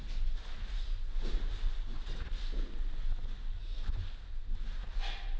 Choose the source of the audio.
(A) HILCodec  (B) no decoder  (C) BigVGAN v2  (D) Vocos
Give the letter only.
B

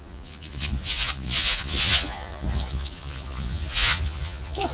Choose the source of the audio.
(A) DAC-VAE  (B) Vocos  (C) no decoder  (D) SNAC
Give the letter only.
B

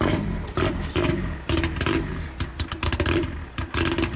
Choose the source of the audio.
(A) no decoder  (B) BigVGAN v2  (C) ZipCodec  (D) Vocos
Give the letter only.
B